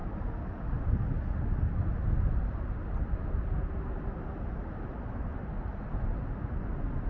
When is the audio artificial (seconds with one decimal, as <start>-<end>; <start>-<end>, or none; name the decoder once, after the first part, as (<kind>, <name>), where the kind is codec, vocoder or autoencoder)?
none